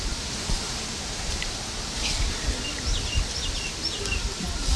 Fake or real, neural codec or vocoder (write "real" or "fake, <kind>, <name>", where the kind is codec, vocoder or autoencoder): real